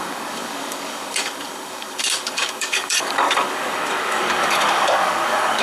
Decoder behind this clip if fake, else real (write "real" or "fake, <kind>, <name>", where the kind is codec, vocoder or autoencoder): fake, codec, DAC